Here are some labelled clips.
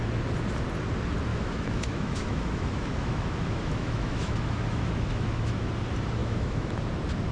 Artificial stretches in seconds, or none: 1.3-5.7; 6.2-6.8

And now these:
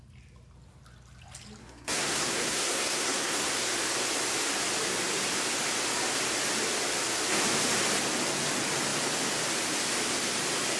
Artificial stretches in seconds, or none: 1.6-3.5

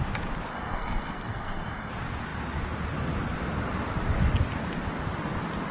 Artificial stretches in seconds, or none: 0.5-1.9